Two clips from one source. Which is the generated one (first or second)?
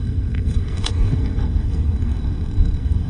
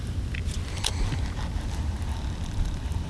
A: first